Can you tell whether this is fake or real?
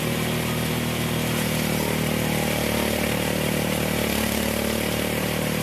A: real